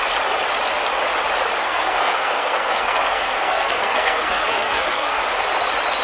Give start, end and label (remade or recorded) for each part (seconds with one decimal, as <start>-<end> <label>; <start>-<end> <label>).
0.0-1.6 recorded; 1.6-5.2 remade; 5.2-6.0 recorded